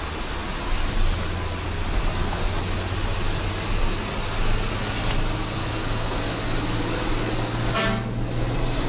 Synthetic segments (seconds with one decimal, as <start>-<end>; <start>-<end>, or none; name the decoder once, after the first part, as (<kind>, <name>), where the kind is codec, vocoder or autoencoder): 5.6-6.2 (codec, SNAC)